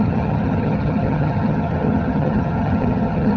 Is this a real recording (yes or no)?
no